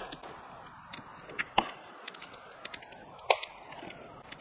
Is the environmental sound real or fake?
real